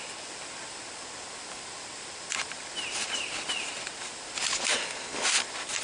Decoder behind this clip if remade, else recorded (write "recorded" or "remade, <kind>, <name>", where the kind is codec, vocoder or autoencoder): recorded